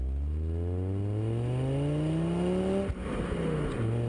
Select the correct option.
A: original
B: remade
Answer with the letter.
A